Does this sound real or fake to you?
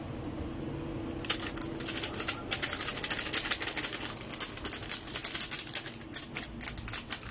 real